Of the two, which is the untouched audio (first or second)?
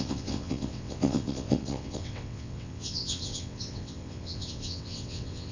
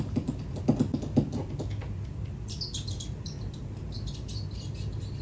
second